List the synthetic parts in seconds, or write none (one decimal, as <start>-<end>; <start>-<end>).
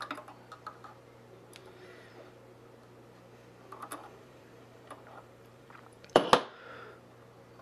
1.6-2.1; 4.0-6.3